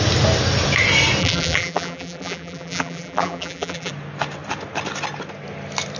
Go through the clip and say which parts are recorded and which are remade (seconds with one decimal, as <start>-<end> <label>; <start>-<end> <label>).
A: 0.0-1.2 recorded; 1.2-3.9 remade; 3.9-6.0 recorded